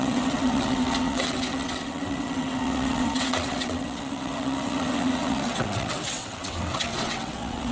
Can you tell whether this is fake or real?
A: fake